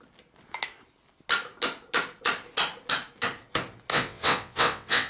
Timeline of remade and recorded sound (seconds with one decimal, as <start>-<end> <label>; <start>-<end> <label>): 0.0-3.9 recorded; 3.9-5.1 remade